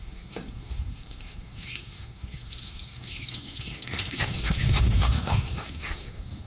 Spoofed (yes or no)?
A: yes